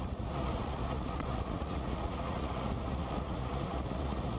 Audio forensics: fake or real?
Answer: fake